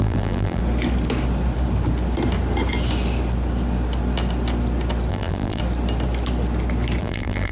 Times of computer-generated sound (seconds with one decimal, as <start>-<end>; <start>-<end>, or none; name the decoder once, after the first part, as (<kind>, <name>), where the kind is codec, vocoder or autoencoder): 0.0-0.6 (vocoder, BigVGAN v2); 5.1-5.6; 7.0-7.5